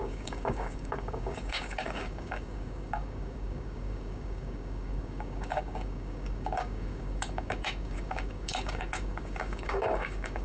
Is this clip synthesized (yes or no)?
yes